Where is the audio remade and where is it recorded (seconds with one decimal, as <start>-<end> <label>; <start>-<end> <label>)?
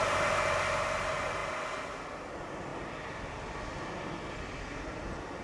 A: 0.0-5.4 recorded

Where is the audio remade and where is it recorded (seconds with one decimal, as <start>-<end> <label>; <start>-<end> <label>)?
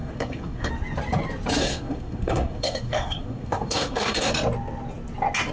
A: 0.0-0.7 remade; 0.7-1.6 recorded; 1.6-4.3 remade; 4.3-5.5 recorded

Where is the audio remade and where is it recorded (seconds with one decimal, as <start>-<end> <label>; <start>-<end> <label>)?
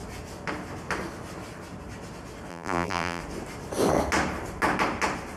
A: 0.0-2.5 recorded; 2.5-3.2 remade; 3.2-5.4 recorded